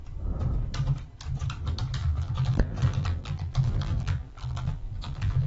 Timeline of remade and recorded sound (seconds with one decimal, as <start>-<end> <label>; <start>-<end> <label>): 0.0-2.0 recorded; 2.0-5.5 remade